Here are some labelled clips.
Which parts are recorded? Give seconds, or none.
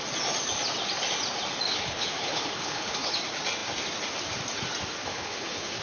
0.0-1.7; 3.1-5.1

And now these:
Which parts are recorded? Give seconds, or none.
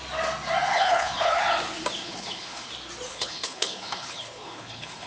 0.0-0.7; 1.4-2.0; 2.7-3.1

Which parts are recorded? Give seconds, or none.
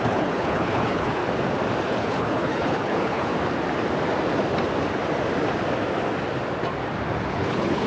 1.2-1.8; 3.3-7.3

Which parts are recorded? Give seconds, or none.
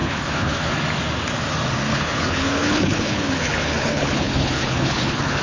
0.7-1.9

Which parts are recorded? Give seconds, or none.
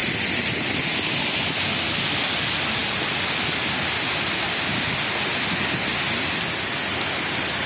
0.0-7.7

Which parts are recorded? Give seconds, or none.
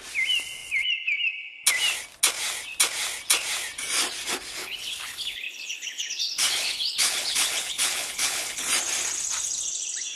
0.0-4.6; 8.7-10.2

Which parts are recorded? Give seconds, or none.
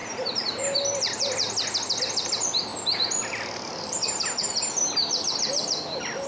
0.0-6.3